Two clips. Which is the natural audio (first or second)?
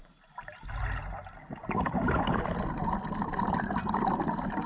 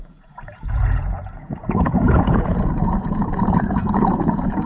first